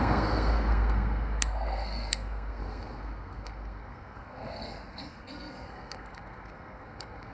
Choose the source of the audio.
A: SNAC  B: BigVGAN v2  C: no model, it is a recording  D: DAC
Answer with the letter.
A